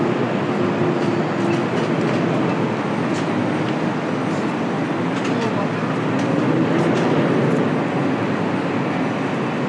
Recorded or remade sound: recorded